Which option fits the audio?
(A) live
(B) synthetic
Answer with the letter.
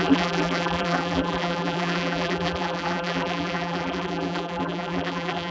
B